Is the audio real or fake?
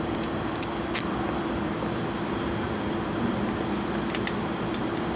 real